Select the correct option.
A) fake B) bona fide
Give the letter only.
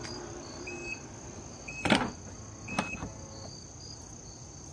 B